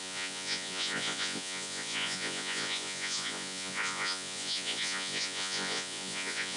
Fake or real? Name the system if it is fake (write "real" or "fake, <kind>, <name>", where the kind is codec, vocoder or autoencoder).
fake, vocoder, Vocos